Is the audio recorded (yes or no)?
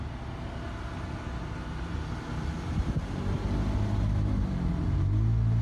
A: yes